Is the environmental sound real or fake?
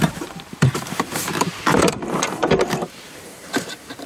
fake